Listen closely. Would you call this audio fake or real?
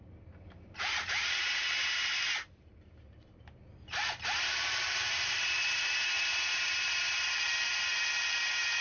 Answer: fake